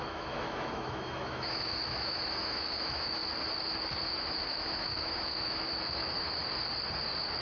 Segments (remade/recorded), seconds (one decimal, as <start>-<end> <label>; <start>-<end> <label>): 0.0-3.2 remade; 3.2-4.1 recorded; 4.1-6.4 remade; 6.4-7.4 recorded